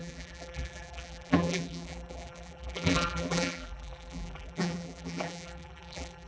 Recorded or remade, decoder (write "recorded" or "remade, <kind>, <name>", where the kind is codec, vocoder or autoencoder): remade, vocoder, BigVGAN v2